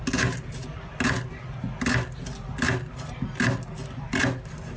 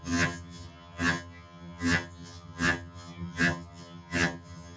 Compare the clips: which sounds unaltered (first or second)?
first